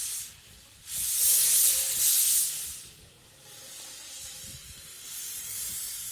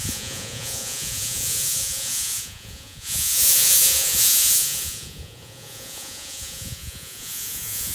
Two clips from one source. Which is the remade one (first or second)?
second